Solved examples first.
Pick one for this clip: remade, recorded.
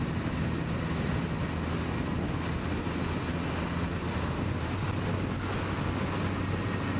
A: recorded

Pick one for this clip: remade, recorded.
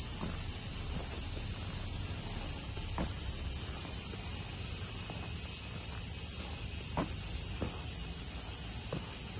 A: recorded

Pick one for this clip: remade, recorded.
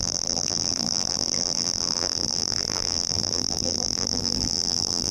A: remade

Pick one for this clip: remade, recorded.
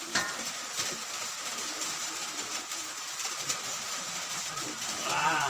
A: remade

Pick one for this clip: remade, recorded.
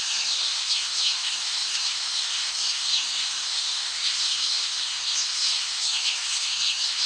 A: remade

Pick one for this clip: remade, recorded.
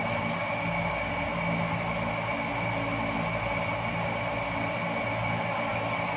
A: recorded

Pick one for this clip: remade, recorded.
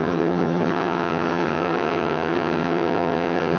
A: remade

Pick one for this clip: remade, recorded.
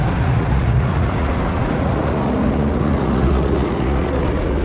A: remade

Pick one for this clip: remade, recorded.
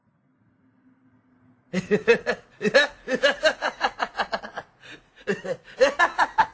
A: recorded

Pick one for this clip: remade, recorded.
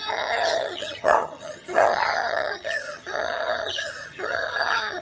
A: remade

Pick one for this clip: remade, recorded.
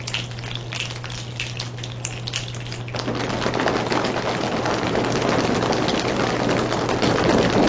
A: recorded